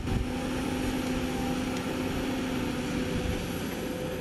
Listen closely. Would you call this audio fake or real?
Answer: real